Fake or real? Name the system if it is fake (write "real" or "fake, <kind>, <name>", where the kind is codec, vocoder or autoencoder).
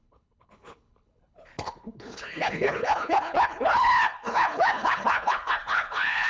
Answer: fake, codec, HILCodec